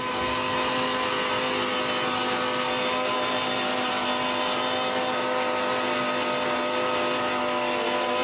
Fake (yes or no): no